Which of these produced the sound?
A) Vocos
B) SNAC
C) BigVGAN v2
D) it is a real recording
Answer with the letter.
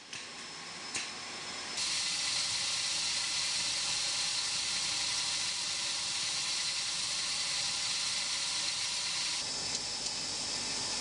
D